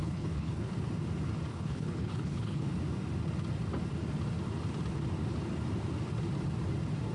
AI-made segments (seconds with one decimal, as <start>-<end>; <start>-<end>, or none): 0.0-0.7; 1.5-2.7